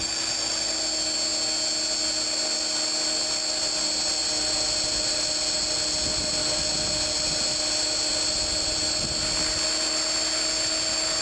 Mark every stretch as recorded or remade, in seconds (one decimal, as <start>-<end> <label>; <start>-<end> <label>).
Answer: 0.0-11.2 recorded